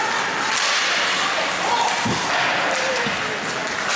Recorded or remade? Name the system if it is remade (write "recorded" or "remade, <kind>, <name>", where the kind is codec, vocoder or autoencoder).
recorded